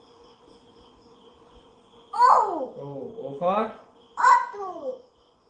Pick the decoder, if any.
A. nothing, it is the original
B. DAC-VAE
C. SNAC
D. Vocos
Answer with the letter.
D